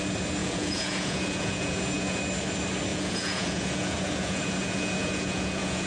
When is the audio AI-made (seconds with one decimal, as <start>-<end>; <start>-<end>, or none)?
0.4-2.2; 2.9-5.9